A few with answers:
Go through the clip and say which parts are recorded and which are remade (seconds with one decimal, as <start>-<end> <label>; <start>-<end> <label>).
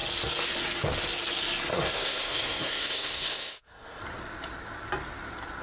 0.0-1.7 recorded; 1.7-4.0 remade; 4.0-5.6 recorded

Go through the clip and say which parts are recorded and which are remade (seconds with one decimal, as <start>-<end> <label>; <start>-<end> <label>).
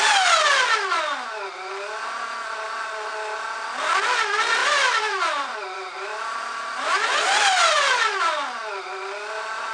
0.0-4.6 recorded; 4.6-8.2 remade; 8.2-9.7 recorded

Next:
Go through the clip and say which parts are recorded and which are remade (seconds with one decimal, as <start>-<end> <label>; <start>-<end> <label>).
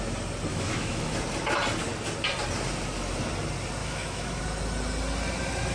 0.0-0.5 recorded; 0.5-1.1 remade; 1.1-3.8 recorded; 3.8-4.4 remade; 4.4-5.7 recorded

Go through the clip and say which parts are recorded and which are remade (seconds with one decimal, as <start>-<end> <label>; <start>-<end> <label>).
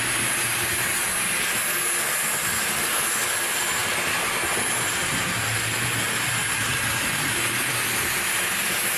0.0-9.0 recorded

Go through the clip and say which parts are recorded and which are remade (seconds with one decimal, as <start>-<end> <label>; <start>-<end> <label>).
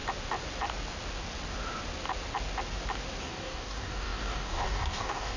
0.0-3.2 recorded; 3.2-5.4 remade